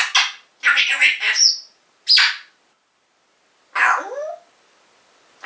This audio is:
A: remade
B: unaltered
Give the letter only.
B